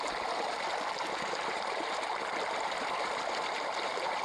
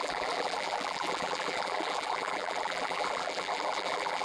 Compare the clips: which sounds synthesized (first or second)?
second